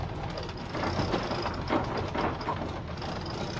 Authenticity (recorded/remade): recorded